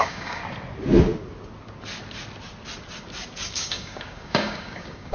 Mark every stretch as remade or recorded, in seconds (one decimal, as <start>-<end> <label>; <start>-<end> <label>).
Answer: 0.0-0.4 remade; 0.4-3.5 recorded; 3.5-5.1 remade